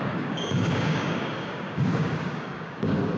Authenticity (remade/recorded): remade